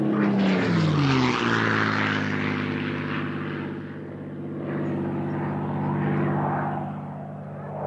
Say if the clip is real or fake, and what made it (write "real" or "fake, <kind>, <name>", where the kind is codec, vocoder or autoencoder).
real